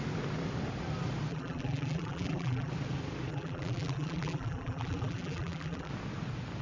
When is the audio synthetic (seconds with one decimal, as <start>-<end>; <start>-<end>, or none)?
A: 1.3-2.7; 3.3-5.9